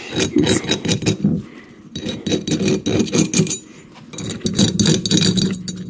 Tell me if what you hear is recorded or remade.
recorded